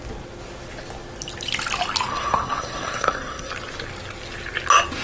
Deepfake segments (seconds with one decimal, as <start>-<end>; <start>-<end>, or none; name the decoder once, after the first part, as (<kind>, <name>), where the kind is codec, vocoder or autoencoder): 2.1-3.5 (codec, SNAC)